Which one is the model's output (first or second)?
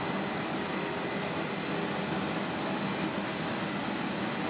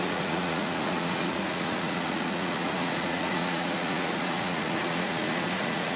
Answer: second